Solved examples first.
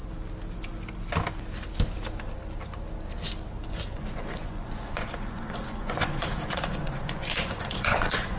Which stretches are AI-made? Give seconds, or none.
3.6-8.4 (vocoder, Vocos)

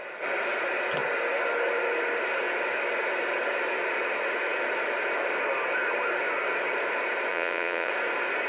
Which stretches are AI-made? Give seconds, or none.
7.3-7.9 (vocoder, Vocos)